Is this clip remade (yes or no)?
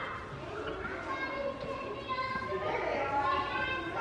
no